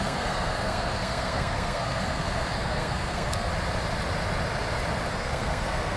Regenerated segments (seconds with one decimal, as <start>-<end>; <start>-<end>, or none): 0.0-3.5; 5.1-6.0